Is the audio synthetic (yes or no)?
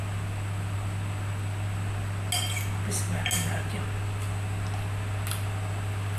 no